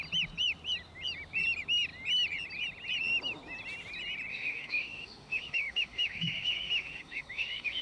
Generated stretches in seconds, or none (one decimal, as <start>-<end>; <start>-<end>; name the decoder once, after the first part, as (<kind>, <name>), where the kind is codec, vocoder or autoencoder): 4.3-7.8 (autoencoder, DAC-VAE)